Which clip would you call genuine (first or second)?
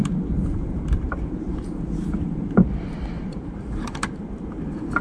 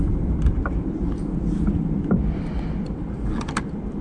second